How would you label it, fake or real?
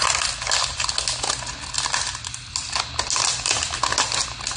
real